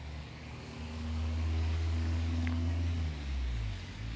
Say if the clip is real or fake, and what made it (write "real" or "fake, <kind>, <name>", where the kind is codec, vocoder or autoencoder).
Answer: fake, codec, DAC